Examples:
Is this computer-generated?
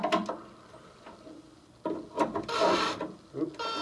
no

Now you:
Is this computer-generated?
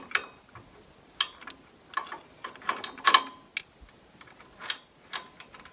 no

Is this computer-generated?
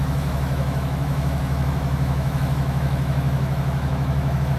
yes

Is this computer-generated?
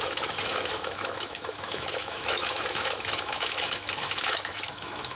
yes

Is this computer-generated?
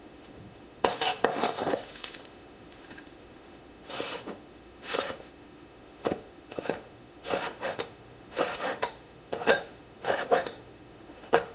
yes